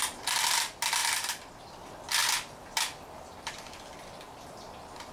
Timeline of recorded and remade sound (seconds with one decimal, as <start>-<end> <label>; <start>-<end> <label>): 0.0-1.0 recorded; 1.0-1.6 remade; 1.6-5.1 recorded

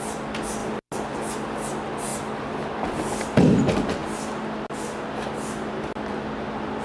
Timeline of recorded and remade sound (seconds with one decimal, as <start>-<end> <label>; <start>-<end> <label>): 0.0-6.8 recorded